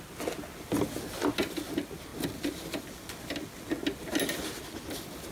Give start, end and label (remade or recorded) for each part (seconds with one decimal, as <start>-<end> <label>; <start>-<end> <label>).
0.0-5.3 recorded